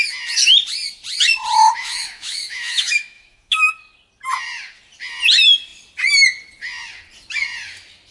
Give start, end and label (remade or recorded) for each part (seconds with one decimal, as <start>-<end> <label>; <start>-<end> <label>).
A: 0.0-1.8 recorded; 1.8-3.7 remade; 3.7-8.1 recorded

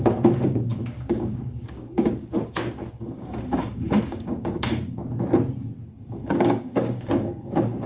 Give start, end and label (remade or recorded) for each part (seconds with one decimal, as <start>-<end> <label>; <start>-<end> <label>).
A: 0.0-5.0 remade; 5.0-5.9 recorded; 5.9-7.9 remade

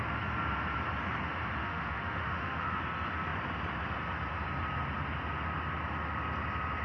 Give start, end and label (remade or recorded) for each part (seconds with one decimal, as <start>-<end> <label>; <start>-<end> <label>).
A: 0.0-1.6 recorded; 1.6-2.8 remade; 2.8-6.8 recorded

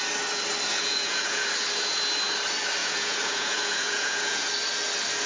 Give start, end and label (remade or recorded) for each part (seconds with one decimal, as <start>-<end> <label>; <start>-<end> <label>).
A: 0.0-0.7 recorded; 0.7-1.5 remade; 1.5-2.8 recorded; 2.8-4.5 remade; 4.5-5.3 recorded

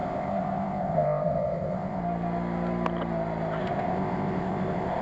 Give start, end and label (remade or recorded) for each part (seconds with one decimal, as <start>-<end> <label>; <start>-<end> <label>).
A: 0.0-2.0 remade; 2.0-3.6 recorded; 3.6-5.0 remade